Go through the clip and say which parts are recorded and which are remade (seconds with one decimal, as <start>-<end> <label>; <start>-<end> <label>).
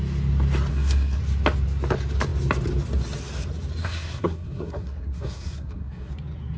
0.0-0.7 recorded; 0.7-1.2 remade; 1.2-3.8 recorded; 3.8-6.1 remade; 6.1-6.6 recorded